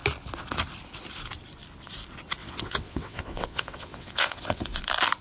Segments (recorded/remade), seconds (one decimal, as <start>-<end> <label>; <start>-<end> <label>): 0.0-2.4 recorded; 2.4-4.8 remade; 4.8-5.2 recorded